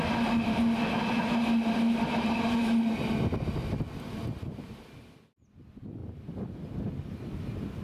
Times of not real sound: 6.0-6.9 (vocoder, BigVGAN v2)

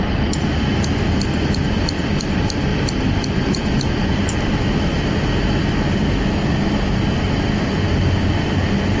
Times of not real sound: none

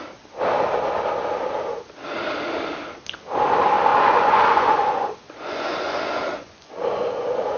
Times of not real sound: 3.9-7.6 (vocoder, Vocos)

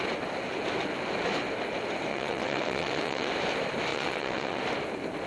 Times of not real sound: 2.1-3.3 (vocoder, WaveNeXt); 3.9-4.6

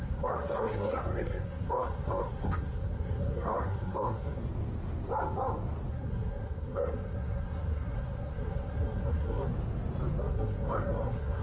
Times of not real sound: 0.0-4.4 (codec, SNAC); 5.9-9.5; 10.2-11.4